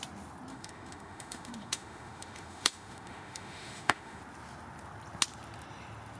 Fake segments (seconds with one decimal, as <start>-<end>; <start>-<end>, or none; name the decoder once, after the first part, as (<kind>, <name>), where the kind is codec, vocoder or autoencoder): 0.5-4.2 (autoencoder, DAC-VAE)